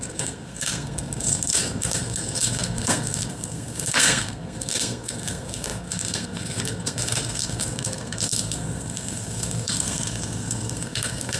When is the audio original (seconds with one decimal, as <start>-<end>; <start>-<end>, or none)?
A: none